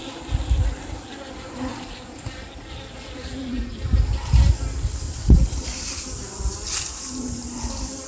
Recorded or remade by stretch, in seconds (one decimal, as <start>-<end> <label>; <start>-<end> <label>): 0.0-8.1 recorded